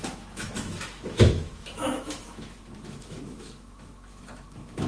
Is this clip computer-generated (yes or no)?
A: yes